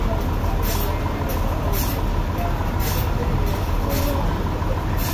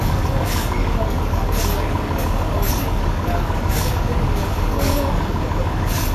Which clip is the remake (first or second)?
second